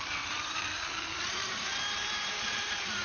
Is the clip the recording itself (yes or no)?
no